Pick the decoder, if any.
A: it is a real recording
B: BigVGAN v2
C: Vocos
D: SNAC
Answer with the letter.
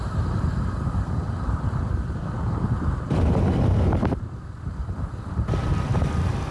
B